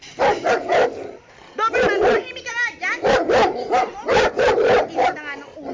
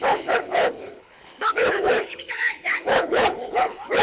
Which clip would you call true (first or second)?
first